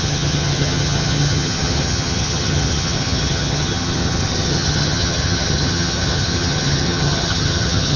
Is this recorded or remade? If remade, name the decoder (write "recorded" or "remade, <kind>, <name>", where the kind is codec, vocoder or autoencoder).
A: remade, vocoder, HiFi-GAN